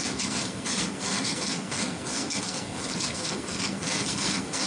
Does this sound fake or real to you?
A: fake